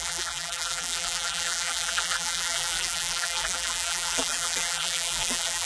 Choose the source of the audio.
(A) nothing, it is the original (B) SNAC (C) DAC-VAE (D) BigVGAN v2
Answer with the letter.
D